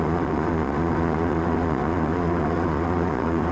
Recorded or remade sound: remade